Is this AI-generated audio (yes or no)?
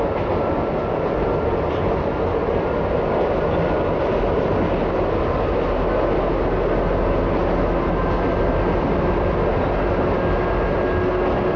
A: no